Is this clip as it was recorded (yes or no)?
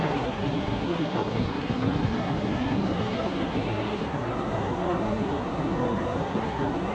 no